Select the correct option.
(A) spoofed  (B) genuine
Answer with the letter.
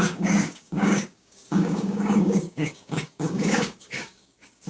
A